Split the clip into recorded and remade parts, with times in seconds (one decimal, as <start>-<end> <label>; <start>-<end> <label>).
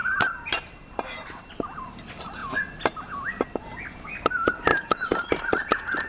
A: 0.0-2.0 remade; 2.0-4.7 recorded; 4.7-5.6 remade; 5.6-6.1 recorded